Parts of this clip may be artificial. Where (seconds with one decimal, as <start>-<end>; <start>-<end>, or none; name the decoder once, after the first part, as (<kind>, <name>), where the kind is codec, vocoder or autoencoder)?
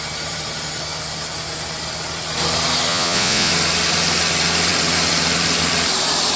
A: 2.9-3.5 (vocoder, Vocos)